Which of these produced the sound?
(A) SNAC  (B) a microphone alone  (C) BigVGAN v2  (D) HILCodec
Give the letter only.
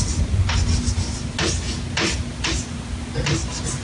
B